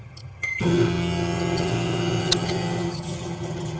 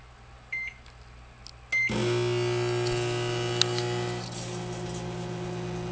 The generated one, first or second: first